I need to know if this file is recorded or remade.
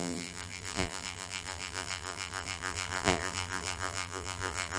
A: remade